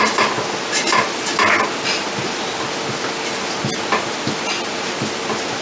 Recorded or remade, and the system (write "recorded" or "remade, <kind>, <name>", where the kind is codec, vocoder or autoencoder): recorded